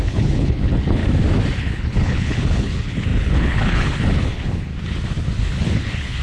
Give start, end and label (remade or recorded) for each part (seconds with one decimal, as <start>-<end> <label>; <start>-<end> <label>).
0.0-1.0 remade; 1.0-1.6 recorded; 1.6-4.7 remade; 4.7-5.4 recorded; 5.4-6.2 remade